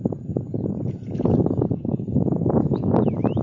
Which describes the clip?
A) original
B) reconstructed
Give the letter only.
B